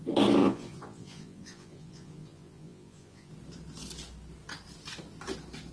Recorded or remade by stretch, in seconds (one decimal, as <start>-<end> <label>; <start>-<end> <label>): 0.0-0.4 recorded; 0.4-3.3 remade; 3.3-5.7 recorded